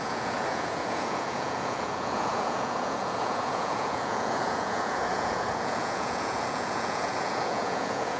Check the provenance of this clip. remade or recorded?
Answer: remade